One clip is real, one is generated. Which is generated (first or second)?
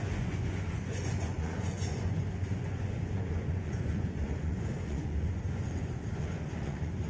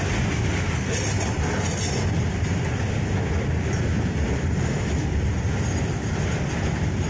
first